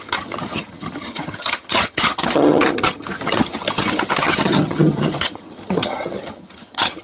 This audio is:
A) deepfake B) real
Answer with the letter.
A